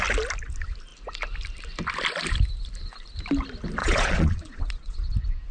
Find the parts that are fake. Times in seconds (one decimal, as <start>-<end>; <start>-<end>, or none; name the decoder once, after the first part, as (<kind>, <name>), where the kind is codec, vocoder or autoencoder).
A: 3.8-5.1 (vocoder, Vocos)